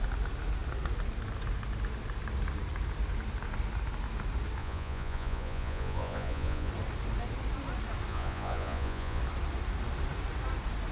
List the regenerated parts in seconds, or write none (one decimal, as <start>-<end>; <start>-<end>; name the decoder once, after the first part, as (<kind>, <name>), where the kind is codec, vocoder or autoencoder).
4.6-6.7 (vocoder, Vocos); 8.1-9.2